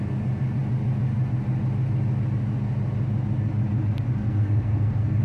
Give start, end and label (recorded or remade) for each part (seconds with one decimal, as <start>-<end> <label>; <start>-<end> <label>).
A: 0.0-4.2 recorded; 4.2-5.2 remade